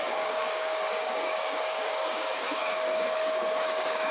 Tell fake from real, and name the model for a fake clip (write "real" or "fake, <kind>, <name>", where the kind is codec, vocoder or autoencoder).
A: fake, codec, DAC